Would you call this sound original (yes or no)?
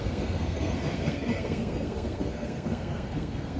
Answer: no